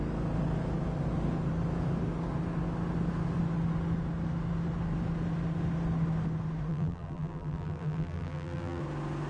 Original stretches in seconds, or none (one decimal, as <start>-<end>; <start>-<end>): 0.0-6.7; 8.8-9.3